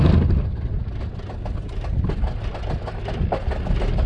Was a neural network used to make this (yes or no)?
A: no